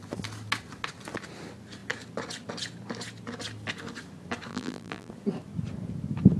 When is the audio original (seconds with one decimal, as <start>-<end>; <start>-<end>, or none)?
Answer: 0.0-4.5; 5.1-6.4